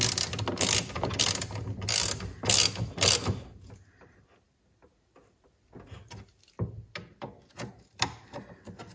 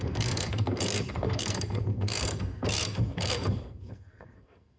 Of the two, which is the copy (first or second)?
second